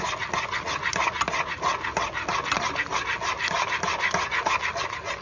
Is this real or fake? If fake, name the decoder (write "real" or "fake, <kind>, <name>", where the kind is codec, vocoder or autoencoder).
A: real